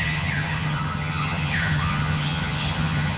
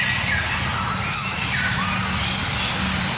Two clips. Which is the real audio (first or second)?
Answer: second